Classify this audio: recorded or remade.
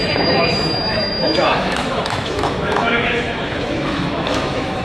remade